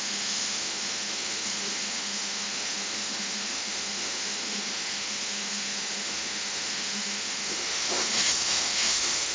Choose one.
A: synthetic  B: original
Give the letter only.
A